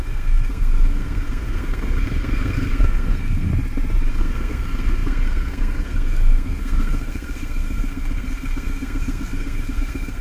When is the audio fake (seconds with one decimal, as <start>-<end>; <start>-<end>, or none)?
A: 0.0-3.5; 4.1-10.2